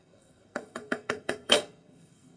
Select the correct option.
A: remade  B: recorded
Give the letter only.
A